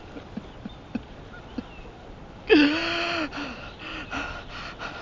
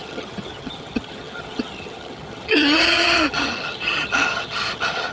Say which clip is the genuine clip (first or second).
first